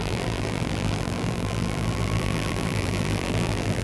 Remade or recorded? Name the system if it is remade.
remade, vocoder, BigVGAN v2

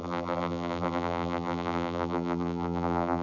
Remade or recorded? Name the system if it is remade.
remade, vocoder, BigVGAN v2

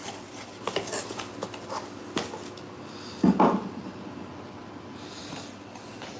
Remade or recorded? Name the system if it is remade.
recorded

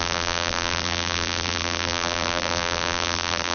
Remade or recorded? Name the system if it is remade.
remade, vocoder, BigVGAN v2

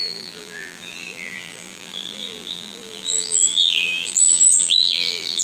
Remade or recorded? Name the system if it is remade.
remade, vocoder, BigVGAN v2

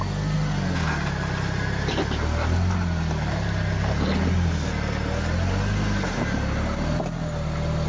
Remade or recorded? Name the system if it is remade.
recorded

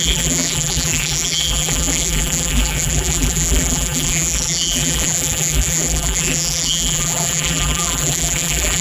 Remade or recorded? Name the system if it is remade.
remade, vocoder, BigVGAN v2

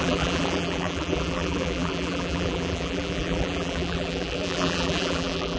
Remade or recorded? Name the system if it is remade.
remade, vocoder, BigVGAN v2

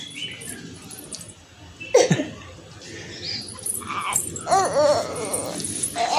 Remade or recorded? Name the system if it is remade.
recorded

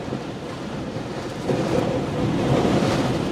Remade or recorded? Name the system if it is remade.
remade, vocoder, BigVGAN v2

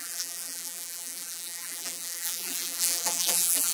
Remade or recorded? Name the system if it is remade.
remade, vocoder, BigVGAN v2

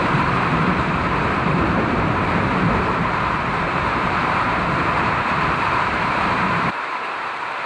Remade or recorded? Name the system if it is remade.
remade, vocoder, BigVGAN v2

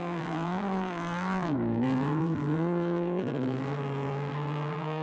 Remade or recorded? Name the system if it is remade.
remade, vocoder, BigVGAN v2